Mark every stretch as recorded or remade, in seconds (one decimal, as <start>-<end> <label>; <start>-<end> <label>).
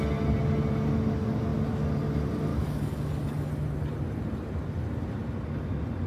0.0-2.5 recorded; 2.5-3.5 remade; 3.5-6.1 recorded